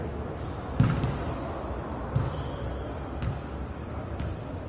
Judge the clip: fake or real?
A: real